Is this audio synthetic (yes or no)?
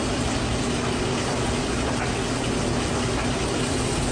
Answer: no